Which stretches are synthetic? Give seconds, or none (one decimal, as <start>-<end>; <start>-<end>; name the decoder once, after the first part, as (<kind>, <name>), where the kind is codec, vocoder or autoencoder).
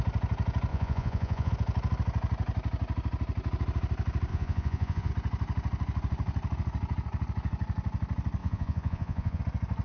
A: 0.7-1.5 (vocoder, Vocos); 4.3-5.1; 8.4-9.4